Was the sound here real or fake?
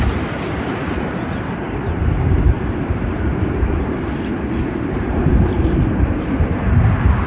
fake